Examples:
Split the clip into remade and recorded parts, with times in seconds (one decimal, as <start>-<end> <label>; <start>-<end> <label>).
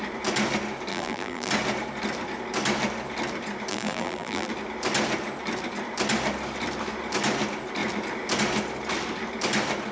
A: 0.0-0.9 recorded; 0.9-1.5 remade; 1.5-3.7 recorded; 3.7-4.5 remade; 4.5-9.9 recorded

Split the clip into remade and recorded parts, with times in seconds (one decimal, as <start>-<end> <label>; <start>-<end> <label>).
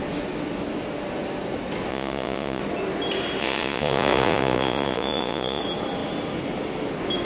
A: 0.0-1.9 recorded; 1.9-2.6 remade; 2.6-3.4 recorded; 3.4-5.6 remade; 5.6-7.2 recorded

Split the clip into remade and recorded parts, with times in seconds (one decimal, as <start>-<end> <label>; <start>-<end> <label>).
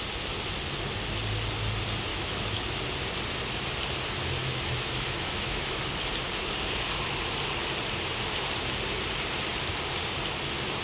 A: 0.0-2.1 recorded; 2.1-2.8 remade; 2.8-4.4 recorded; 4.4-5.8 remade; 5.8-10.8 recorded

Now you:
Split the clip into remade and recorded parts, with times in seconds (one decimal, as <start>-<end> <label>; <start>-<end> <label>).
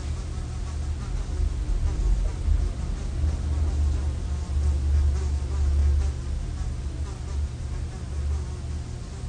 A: 0.0-9.3 recorded